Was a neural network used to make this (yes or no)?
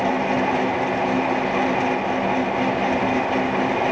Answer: no